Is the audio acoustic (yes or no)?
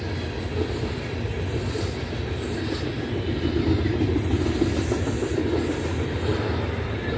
yes